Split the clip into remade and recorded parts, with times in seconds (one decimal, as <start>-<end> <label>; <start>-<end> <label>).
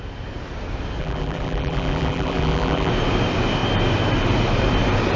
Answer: 0.0-1.0 recorded; 1.0-2.9 remade; 2.9-5.2 recorded